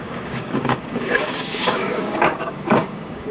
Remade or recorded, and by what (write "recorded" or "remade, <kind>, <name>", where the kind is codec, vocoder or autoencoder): remade, codec, DAC